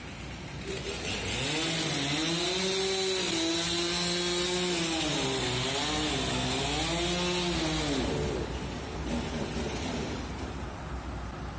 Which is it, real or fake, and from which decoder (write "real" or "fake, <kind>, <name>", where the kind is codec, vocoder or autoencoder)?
real